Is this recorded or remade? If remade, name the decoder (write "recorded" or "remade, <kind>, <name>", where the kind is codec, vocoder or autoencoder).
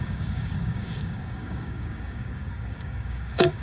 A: remade, codec, DAC